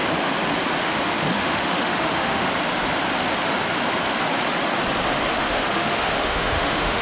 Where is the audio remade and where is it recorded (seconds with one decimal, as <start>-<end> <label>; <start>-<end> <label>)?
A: 0.0-0.8 recorded; 0.8-2.5 remade; 2.5-5.3 recorded; 5.3-7.0 remade